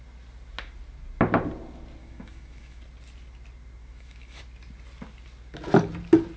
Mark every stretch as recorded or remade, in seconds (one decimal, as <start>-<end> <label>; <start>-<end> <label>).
0.0-2.0 recorded; 2.0-2.8 remade; 2.8-3.8 recorded; 3.8-4.4 remade; 4.4-6.4 recorded